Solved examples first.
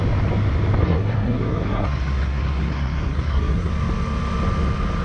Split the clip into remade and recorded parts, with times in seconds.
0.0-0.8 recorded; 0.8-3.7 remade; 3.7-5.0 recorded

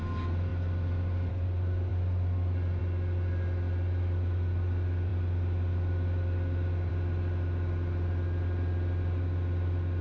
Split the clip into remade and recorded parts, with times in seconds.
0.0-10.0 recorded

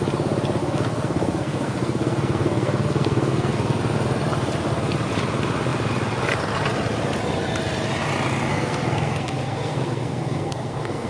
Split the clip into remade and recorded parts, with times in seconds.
0.0-0.6 recorded; 0.6-3.8 remade; 3.8-8.5 recorded; 8.5-11.1 remade

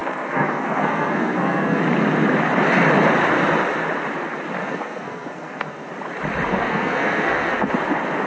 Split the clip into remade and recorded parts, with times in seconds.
0.0-1.8 remade; 1.8-4.6 recorded; 4.6-5.9 remade; 5.9-6.5 recorded; 6.5-7.7 remade; 7.7-8.3 recorded